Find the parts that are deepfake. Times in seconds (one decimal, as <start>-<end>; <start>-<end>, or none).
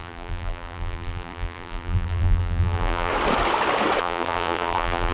0.0-3.1; 4.0-5.1